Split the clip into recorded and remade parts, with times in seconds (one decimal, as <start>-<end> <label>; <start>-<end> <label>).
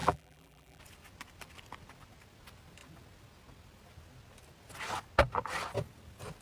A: 0.0-0.8 remade; 0.8-6.4 recorded